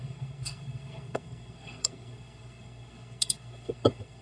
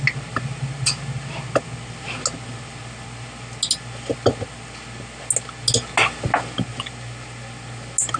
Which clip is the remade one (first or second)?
first